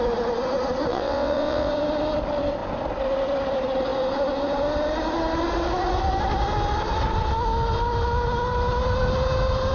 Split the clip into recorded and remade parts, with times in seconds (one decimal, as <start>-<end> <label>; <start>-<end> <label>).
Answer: 0.0-0.9 recorded; 0.9-1.7 remade; 1.7-9.7 recorded